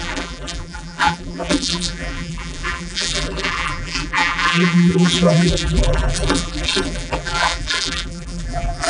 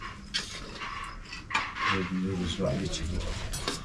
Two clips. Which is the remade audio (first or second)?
first